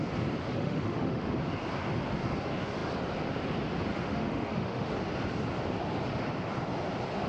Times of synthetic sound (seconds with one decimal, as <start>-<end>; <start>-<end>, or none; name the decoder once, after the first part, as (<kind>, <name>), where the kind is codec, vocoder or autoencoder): 0.4-1.2 (autoencoder, DAC-VAE); 3.9-4.9